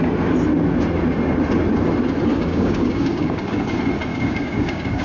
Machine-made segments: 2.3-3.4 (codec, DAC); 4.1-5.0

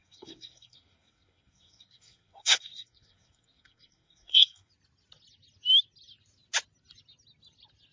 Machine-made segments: 0.0-4.7 (codec, SNAC)

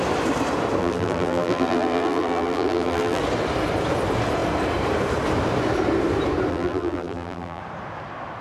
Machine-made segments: 0.8-3.2 (vocoder, BigVGAN v2); 6.5-7.6

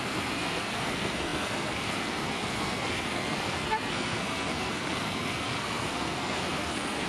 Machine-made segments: 0.0-7.1 (codec, SNAC)

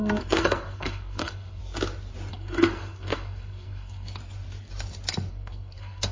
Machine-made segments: 0.0-1.6 (codec, SNAC); 2.3-4.2; 5.3-6.1

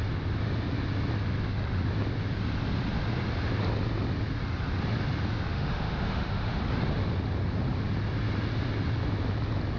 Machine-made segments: 5.5-6.6 (autoencoder, DAC-VAE)